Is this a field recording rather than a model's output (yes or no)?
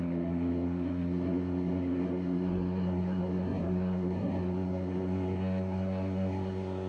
no